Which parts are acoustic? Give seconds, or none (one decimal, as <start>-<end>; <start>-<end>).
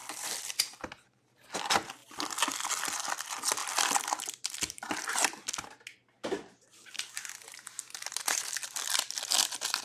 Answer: 0.6-3.6; 5.5-9.8